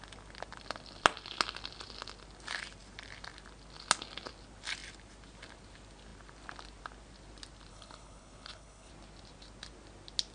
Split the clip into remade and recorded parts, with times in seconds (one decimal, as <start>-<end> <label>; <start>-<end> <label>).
0.0-7.7 recorded; 7.7-8.9 remade; 8.9-10.3 recorded